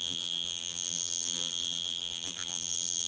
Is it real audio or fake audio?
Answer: fake